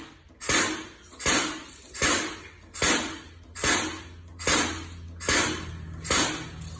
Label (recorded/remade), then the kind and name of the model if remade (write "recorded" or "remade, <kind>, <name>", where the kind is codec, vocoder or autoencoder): recorded